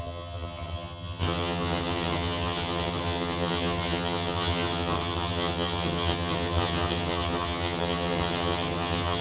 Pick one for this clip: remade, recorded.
remade